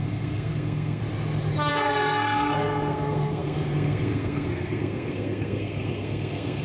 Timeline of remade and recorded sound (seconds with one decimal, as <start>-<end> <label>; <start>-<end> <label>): 0.0-1.0 remade; 1.0-1.7 recorded; 1.7-6.6 remade